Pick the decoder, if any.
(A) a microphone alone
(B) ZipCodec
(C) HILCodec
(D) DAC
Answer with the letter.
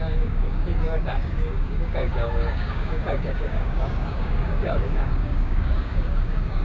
D